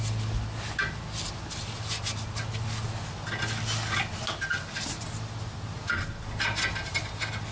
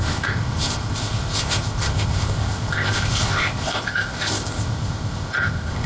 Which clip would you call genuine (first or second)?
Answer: first